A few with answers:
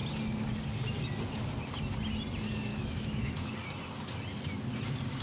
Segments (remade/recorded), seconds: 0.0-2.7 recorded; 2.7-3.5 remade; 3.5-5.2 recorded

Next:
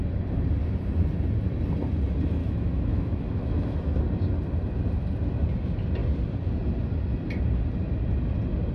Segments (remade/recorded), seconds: 0.0-2.4 recorded; 2.4-4.0 remade; 4.0-8.7 recorded

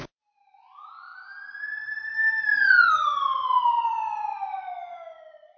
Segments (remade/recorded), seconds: 0.0-5.6 recorded

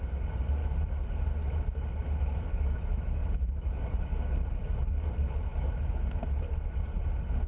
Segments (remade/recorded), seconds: 0.0-2.5 recorded; 2.5-4.3 remade; 4.3-5.5 recorded; 5.5-6.1 remade; 6.1-7.5 recorded

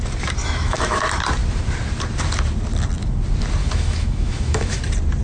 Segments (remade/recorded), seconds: 0.0-0.4 recorded; 0.4-1.0 remade; 1.0-3.6 recorded; 3.6-4.8 remade; 4.8-5.2 recorded

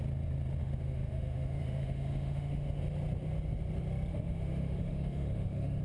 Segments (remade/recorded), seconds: 0.0-0.6 recorded; 0.6-2.8 remade; 2.8-4.1 recorded; 4.1-5.8 remade

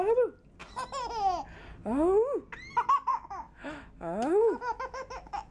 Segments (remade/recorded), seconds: 0.0-3.1 recorded; 3.1-5.5 remade

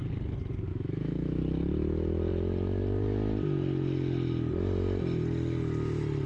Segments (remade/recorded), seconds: 0.0-0.7 recorded; 0.7-1.4 remade; 1.4-6.3 recorded